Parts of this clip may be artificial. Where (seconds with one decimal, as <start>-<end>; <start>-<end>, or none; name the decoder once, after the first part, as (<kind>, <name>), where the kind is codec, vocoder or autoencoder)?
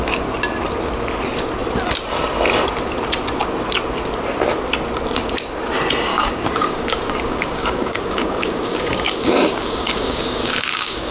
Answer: 6.1-11.1 (codec, DAC)